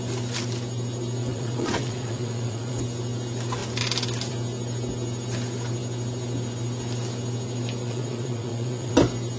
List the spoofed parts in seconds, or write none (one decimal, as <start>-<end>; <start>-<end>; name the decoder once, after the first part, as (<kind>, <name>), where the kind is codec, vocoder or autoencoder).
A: 1.2-2.8 (vocoder, WaveNeXt); 7.8-8.9